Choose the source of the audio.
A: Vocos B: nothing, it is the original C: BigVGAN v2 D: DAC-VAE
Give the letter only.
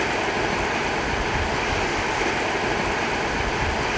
B